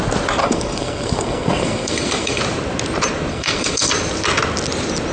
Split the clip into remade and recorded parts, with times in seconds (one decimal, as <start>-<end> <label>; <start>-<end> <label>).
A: 0.0-0.4 recorded; 0.4-2.4 remade; 2.4-3.3 recorded; 3.3-3.9 remade; 3.9-5.1 recorded